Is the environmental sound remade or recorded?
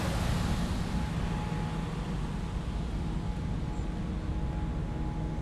recorded